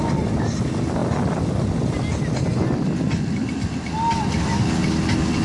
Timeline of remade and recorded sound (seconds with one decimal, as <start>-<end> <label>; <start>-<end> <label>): 0.0-5.4 recorded